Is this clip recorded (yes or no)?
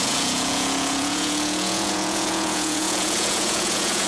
no